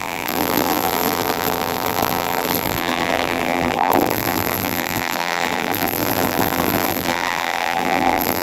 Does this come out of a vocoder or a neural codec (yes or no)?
yes